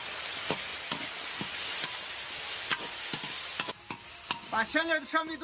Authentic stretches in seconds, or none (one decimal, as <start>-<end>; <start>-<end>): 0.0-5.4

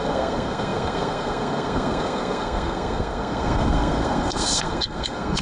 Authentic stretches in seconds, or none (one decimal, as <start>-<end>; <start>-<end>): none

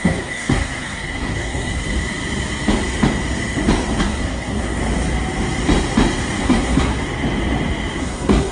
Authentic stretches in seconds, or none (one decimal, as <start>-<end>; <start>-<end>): 1.8-4.0; 4.8-6.4; 6.9-8.0

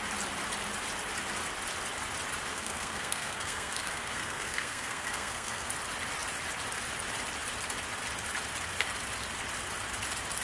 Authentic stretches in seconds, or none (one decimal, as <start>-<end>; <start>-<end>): 0.0-2.5; 5.7-10.4